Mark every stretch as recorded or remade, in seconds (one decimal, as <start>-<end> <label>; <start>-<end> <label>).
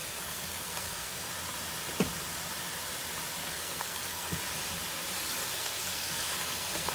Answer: 0.0-1.3 remade; 1.3-3.4 recorded; 3.4-4.4 remade; 4.4-5.4 recorded; 5.4-6.9 remade